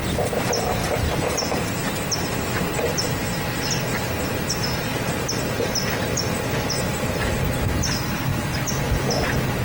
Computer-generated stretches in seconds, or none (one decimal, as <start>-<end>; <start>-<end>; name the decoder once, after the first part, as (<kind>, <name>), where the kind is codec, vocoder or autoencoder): 0.8-1.7 (vocoder, BigVGAN v2); 4.9-7.9; 8.3-9.6